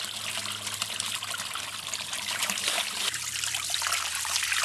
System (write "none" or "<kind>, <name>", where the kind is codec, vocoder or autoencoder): none